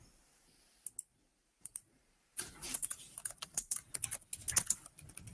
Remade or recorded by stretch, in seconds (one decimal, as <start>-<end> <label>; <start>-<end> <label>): 0.0-1.3 recorded; 1.3-3.9 remade; 3.9-5.3 recorded